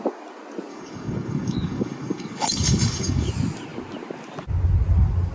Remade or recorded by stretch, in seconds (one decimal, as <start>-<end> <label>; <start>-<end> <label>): 0.0-0.7 recorded; 0.7-3.3 remade; 3.3-5.3 recorded

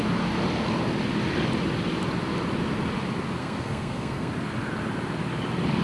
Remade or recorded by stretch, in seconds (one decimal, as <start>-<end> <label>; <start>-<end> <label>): 0.0-3.4 recorded; 3.4-4.3 remade; 4.3-5.8 recorded

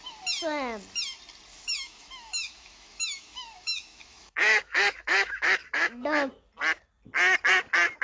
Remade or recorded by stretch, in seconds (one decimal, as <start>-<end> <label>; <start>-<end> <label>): 0.0-1.5 recorded; 1.5-6.3 remade; 6.3-8.0 recorded

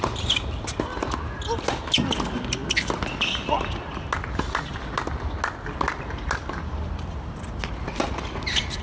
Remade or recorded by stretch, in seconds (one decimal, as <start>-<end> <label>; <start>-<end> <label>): 0.0-8.8 recorded